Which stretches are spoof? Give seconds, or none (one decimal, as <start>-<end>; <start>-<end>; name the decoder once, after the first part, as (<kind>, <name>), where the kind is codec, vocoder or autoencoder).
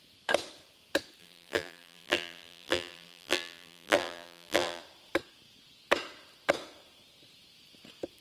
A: 1.2-4.8 (vocoder, BigVGAN v2)